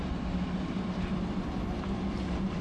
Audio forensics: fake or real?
real